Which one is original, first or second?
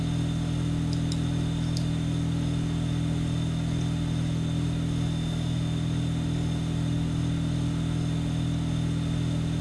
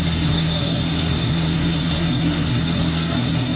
first